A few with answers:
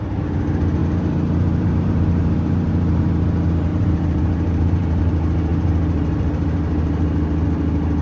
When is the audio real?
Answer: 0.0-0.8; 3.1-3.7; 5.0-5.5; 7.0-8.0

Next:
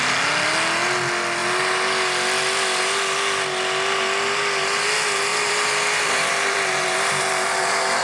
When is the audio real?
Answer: 0.0-5.3

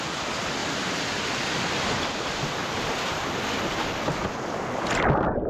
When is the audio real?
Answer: 0.0-5.5

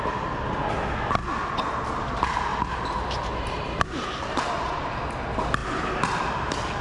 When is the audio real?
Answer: 0.0-2.5; 4.9-6.8

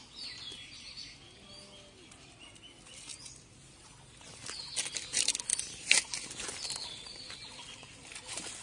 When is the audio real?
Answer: 0.0-5.5; 6.0-8.6

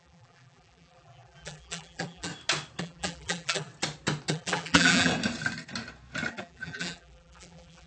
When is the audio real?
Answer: 2.3-2.8; 3.7-4.3; 5.1-6.3

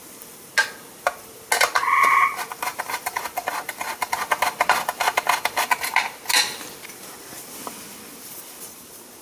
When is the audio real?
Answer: 0.0-2.7; 3.2-9.2

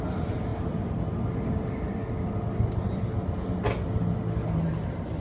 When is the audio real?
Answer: 2.0-5.2